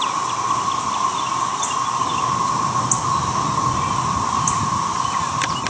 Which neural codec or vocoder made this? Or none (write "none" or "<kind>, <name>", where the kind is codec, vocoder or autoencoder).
none